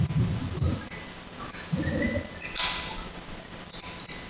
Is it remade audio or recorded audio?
recorded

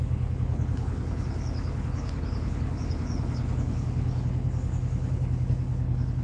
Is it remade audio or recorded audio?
remade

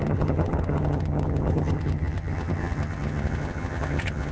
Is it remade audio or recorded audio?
remade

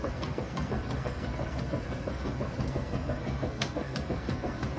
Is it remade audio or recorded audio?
remade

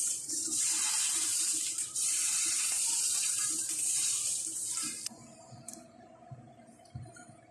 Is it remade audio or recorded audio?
remade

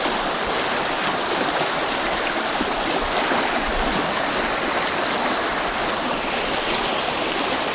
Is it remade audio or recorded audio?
recorded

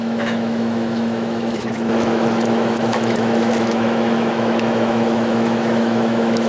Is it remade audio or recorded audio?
remade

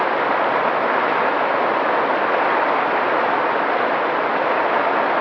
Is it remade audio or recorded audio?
recorded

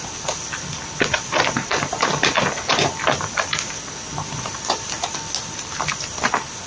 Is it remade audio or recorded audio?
recorded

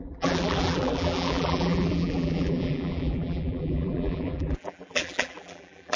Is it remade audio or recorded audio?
remade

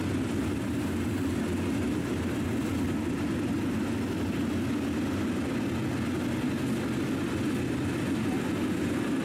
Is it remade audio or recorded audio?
recorded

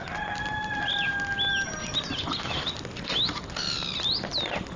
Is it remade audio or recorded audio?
recorded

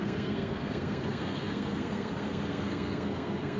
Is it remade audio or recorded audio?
remade